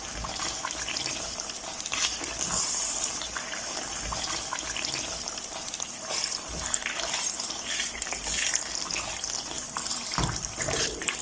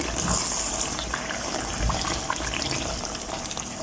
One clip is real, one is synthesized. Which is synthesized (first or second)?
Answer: first